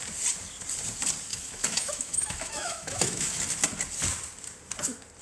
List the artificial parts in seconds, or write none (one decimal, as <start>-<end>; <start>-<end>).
1.3-3.4